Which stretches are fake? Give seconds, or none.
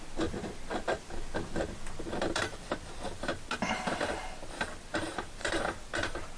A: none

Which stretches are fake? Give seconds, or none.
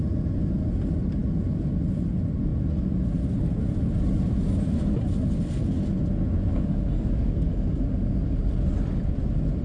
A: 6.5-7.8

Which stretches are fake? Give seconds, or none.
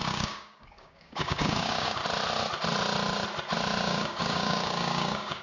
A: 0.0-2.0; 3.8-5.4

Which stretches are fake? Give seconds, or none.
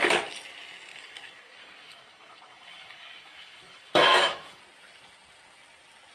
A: 0.9-4.6